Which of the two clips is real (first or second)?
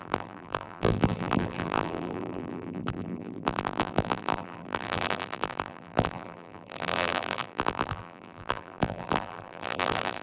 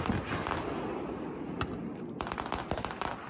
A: second